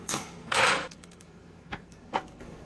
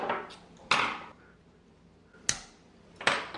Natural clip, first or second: second